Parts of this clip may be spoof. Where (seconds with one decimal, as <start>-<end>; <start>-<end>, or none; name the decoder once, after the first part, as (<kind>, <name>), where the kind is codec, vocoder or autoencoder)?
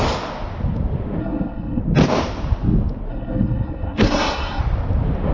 1.2-1.8 (codec, SNAC); 3.1-4.6